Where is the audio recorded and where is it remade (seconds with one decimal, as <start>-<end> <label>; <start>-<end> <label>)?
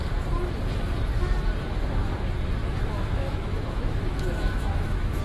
0.0-2.6 recorded; 2.6-5.2 remade